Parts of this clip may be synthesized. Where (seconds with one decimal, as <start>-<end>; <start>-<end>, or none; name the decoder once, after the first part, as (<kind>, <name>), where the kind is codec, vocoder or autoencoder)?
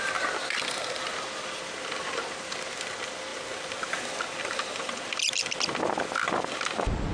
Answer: none